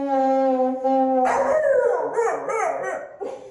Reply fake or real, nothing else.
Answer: real